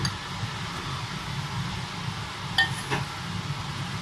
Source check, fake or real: real